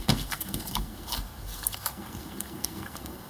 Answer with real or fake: fake